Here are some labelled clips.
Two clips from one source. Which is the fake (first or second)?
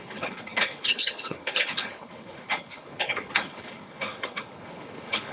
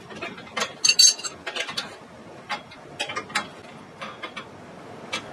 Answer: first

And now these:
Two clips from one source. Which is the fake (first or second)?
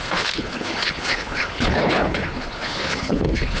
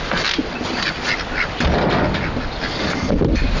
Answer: first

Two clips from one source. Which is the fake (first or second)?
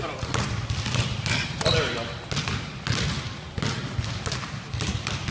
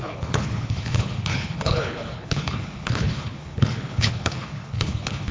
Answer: second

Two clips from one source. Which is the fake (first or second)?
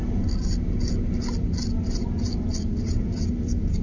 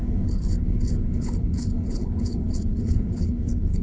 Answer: second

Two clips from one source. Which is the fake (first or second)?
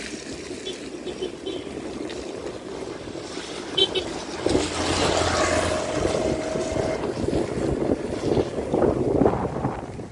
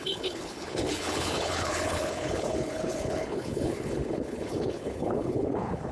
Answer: second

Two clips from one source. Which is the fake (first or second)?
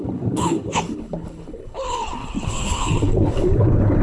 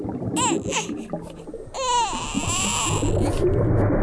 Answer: first